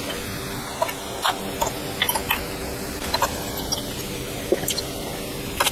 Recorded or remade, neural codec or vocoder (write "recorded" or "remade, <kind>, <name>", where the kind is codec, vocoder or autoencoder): recorded